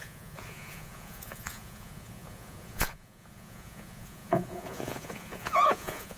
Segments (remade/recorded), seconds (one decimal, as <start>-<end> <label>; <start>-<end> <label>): 0.0-6.2 remade